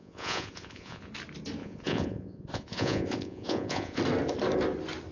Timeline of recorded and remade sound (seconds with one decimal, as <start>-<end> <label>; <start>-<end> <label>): 0.0-1.1 remade; 1.1-1.6 recorded; 1.6-4.0 remade; 4.0-5.1 recorded

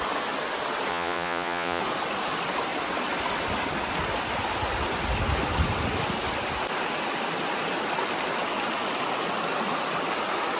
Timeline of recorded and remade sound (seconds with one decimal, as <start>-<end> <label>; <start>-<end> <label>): 0.0-0.9 recorded; 0.9-1.8 remade; 1.8-10.6 recorded

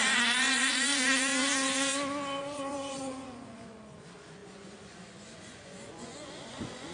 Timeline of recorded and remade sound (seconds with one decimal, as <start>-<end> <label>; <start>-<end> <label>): 0.0-1.3 remade; 1.3-2.4 recorded; 2.4-6.9 remade

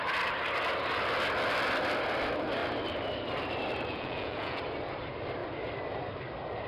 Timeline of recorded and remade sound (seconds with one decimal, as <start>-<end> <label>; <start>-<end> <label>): 0.0-3.9 recorded; 3.9-4.6 remade; 4.6-6.7 recorded

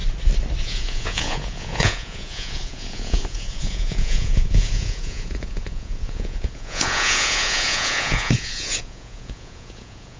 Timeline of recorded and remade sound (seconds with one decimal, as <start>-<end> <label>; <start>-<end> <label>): 0.0-0.6 recorded; 0.6-10.2 remade

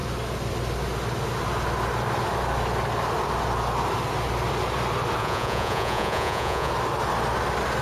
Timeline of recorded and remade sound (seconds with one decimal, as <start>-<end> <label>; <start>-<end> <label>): 0.0-5.2 recorded; 5.2-6.7 remade; 6.7-7.8 recorded

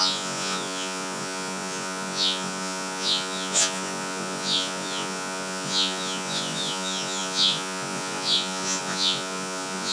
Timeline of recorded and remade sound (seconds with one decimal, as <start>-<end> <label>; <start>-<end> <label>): 0.0-9.9 remade